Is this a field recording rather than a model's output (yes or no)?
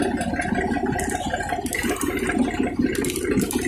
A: yes